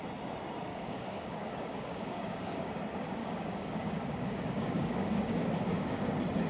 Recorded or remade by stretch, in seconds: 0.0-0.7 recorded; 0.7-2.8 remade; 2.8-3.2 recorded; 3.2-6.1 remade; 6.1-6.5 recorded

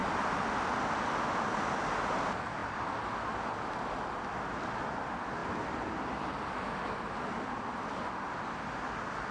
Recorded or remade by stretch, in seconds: 0.0-9.3 recorded

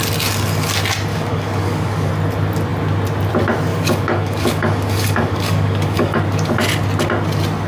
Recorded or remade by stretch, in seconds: 0.0-1.1 recorded; 1.1-2.1 remade; 2.1-3.7 recorded; 3.7-6.2 remade; 6.2-7.7 recorded

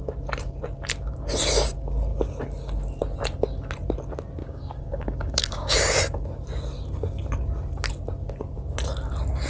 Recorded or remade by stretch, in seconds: 0.0-4.4 recorded; 4.4-6.0 remade; 6.0-9.5 recorded

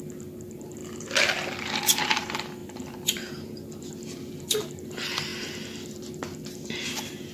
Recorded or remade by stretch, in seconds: 0.0-7.3 recorded

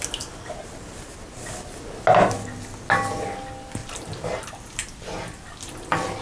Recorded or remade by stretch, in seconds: 0.0-3.8 recorded; 3.8-4.5 remade; 4.5-6.2 recorded

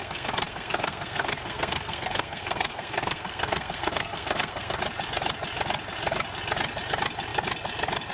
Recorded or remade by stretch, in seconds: 0.0-4.8 remade; 4.8-8.1 recorded